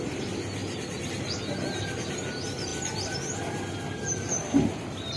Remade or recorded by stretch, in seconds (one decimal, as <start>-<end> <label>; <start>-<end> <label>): 0.0-0.6 recorded; 0.6-1.4 remade; 1.4-5.2 recorded